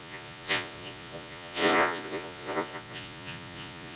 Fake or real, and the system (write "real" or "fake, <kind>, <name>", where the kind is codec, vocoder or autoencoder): fake, vocoder, Vocos